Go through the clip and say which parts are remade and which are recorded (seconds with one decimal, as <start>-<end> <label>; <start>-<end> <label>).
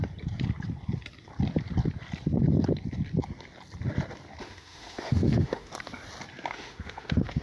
0.0-4.4 recorded; 4.4-5.7 remade; 5.7-6.5 recorded; 6.5-7.4 remade